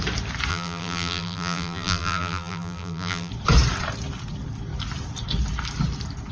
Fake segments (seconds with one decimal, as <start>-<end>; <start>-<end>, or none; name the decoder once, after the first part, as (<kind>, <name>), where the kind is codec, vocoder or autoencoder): 0.5-3.3 (vocoder, BigVGAN v2)